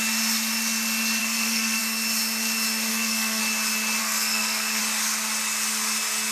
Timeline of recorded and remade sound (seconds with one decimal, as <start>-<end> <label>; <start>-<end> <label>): 0.0-1.2 recorded; 1.2-1.8 remade; 1.8-2.9 recorded; 2.9-3.4 remade; 3.4-4.0 recorded; 4.0-4.8 remade; 4.8-6.3 recorded